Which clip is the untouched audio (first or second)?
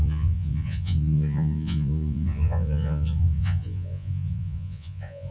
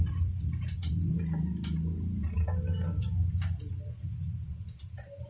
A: second